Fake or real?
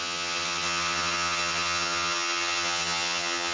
fake